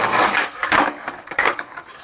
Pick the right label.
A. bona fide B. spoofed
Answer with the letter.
B